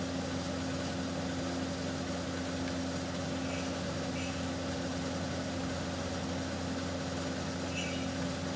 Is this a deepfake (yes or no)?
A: no